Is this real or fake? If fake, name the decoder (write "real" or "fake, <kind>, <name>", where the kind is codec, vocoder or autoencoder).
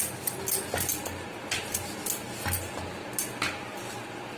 real